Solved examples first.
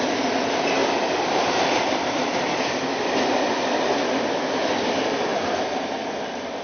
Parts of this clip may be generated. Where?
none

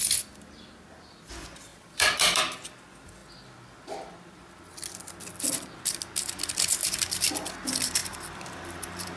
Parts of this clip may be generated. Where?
1.7-2.4 (vocoder, BigVGAN v2); 6.8-7.5; 8.0-9.2

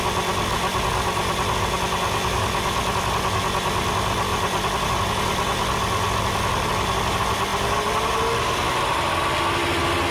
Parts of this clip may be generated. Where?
none

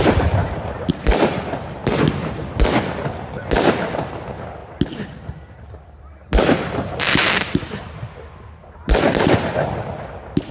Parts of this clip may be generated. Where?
none

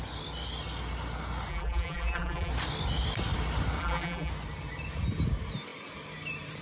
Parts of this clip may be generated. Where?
1.5-2.5 (vocoder, BigVGAN v2); 3.8-4.3

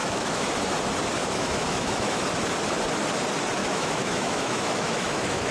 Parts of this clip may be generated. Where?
0.0-0.5 (autoencoder, DAC-VAE); 1.2-2.2; 3.6-5.5

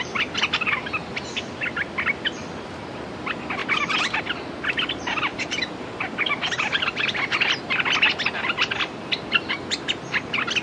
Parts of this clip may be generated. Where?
1.0-2.9 (vocoder, BigVGAN v2); 3.6-4.2; 5.3-9.5